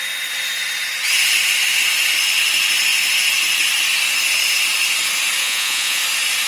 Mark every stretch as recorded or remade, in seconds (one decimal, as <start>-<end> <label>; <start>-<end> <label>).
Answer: 0.0-5.4 recorded; 5.4-6.0 remade; 6.0-6.5 recorded